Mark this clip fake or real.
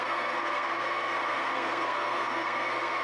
fake